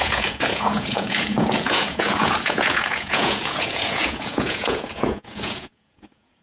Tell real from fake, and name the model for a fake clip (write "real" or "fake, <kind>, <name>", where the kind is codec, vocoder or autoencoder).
fake, vocoder, Vocos